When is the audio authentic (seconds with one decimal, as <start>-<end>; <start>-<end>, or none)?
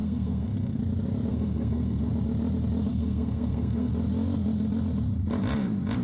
0.8-1.3; 2.1-2.9; 3.9-6.0